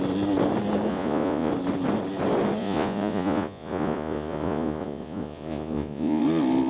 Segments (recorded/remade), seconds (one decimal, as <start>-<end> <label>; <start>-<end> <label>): 0.0-0.9 recorded; 0.9-1.5 remade; 1.5-2.6 recorded; 2.6-6.2 remade; 6.2-6.7 recorded